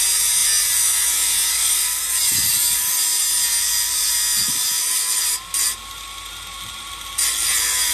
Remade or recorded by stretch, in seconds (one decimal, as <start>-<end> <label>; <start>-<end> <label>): 0.0-1.5 recorded; 1.5-2.0 remade; 2.0-7.9 recorded